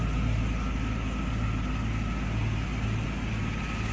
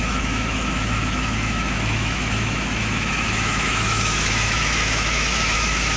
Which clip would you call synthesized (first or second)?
second